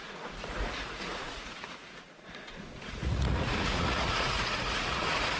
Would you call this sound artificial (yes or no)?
yes